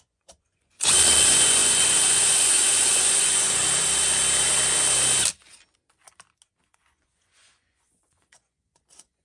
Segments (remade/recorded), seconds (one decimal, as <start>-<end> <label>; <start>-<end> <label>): 0.0-3.6 remade; 3.6-6.6 recorded; 6.6-9.2 remade